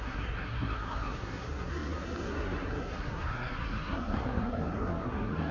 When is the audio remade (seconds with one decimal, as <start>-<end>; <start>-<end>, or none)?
0.0-5.5